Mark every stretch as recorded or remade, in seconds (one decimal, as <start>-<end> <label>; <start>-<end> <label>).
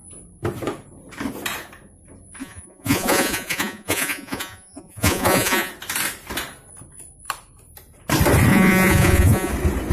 0.0-2.4 recorded; 2.4-5.7 remade; 5.7-8.5 recorded; 8.5-9.5 remade; 9.5-9.9 recorded